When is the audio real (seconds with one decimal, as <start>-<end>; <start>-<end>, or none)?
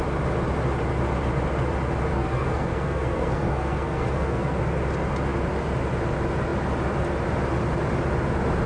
0.0-2.1; 4.6-8.7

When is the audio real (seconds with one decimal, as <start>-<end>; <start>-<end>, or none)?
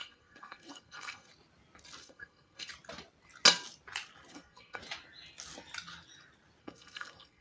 1.3-2.0; 2.7-4.3; 4.8-6.6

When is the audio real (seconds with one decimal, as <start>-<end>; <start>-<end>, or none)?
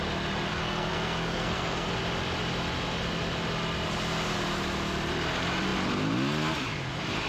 0.0-0.5; 1.9-7.3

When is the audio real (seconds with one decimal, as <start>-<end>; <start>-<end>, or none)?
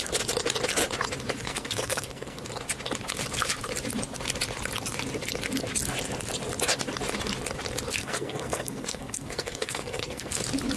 0.0-1.4; 2.4-8.0; 10.4-10.8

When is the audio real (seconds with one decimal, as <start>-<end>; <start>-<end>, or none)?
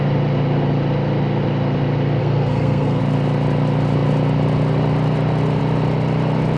0.0-2.2; 3.0-6.6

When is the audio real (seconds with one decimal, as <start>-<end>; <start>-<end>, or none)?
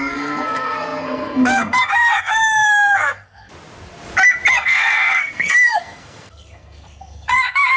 3.5-4.5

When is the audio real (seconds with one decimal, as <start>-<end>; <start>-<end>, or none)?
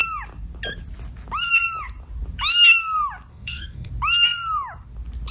0.0-3.3; 3.9-5.3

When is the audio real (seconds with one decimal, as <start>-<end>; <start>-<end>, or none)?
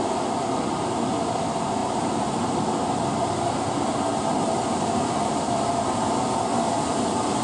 0.0-7.4